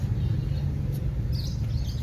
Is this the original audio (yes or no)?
yes